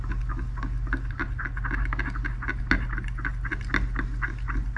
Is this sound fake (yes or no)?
no